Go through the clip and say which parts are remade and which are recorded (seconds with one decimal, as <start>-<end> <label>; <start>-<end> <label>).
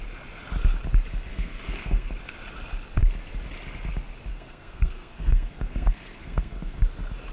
0.0-1.3 recorded; 1.3-2.1 remade; 2.1-4.3 recorded; 4.3-6.8 remade; 6.8-7.3 recorded